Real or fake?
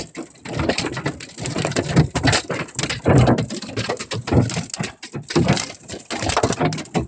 real